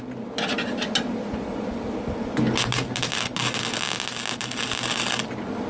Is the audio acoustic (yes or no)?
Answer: yes